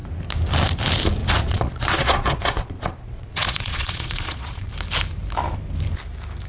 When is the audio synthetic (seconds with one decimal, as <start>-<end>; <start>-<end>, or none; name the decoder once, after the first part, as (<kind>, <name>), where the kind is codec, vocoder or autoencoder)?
1.2-4.7 (vocoder, Vocos)